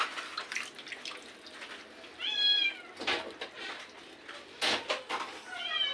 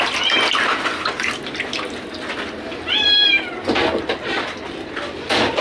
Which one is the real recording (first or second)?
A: first